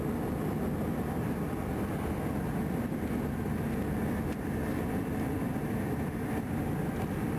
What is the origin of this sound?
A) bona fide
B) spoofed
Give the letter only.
A